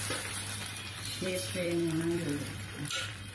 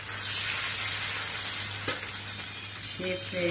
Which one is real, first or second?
second